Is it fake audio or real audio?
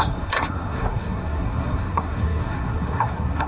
fake